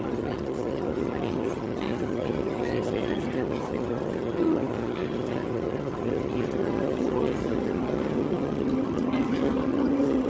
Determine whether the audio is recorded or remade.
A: remade